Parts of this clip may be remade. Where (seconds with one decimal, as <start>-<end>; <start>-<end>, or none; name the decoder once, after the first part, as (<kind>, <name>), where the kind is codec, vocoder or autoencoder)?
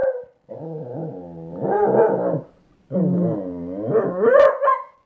0.5-1.0 (vocoder, Vocos); 4.1-5.1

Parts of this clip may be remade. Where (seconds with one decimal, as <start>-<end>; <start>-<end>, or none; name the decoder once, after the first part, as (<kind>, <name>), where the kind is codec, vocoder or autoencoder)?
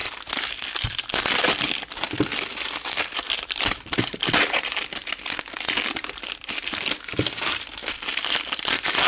0.8-5.0 (vocoder, BigVGAN v2); 7.1-9.1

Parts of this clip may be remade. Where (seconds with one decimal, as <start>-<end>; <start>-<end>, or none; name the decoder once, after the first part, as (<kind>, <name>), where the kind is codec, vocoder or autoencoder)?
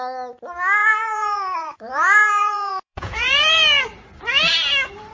0.8-3.8 (vocoder, Vocos)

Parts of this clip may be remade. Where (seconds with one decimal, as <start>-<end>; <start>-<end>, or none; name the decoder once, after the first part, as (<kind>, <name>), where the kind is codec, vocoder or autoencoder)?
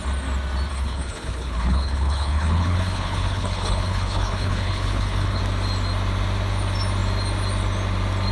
0.7-5.4 (codec, HILCodec)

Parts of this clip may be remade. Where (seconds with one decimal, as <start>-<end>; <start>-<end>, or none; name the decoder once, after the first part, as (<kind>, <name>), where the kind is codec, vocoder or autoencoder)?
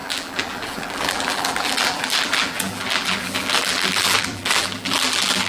0.0-5.5 (vocoder, BigVGAN v2)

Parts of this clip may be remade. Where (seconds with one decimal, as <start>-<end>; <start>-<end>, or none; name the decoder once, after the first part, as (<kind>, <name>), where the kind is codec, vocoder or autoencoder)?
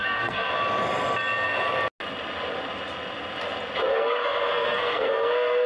0.0-0.5 (codec, SNAC); 3.9-5.7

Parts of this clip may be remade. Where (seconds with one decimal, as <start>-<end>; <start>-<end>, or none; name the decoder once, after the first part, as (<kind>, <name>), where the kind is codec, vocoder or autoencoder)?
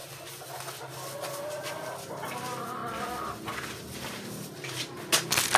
none